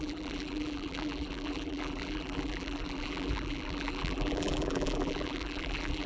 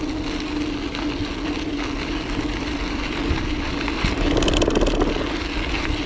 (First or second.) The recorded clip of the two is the second